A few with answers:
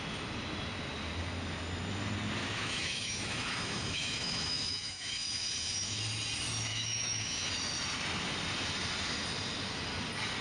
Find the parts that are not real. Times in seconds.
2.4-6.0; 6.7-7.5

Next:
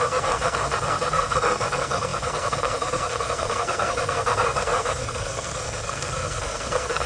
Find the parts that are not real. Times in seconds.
0.0-7.1

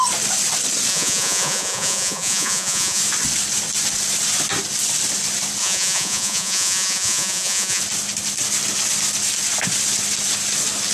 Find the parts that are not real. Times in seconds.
0.9-3.0; 5.6-7.8

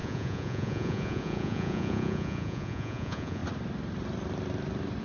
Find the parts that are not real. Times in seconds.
0.0-3.4